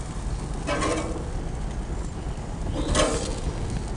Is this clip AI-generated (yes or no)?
no